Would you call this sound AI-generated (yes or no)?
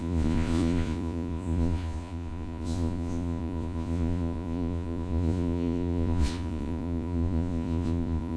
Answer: yes